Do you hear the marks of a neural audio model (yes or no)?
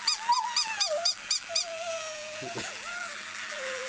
yes